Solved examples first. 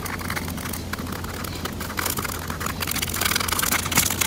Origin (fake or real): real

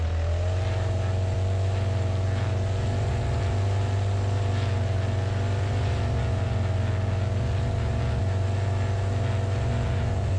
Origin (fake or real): real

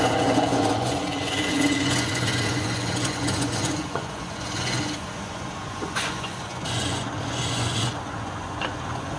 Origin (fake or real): fake